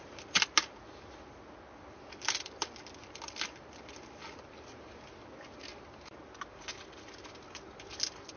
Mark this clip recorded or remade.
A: recorded